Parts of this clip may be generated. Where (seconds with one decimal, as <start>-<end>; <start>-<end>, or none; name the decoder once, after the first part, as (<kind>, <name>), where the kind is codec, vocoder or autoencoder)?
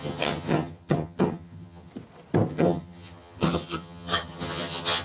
0.0-1.9 (vocoder, HiFi-GAN); 2.5-5.0